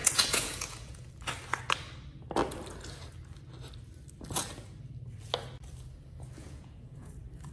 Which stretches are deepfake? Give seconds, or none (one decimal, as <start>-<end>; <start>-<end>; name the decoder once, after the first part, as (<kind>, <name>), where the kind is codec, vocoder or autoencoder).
0.0-1.1 (vocoder, Vocos); 6.4-7.1